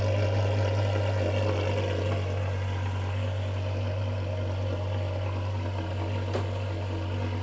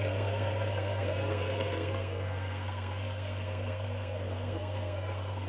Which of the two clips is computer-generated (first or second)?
second